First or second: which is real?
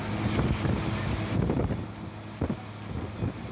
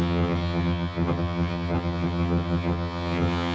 first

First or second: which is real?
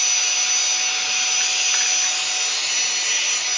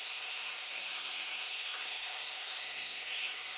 first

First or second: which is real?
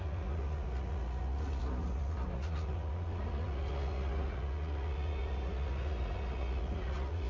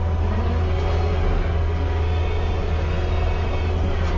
second